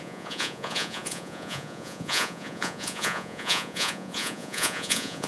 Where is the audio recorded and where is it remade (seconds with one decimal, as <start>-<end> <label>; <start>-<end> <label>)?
0.0-5.3 remade